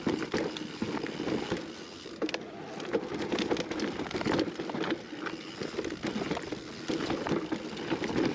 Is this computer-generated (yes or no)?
no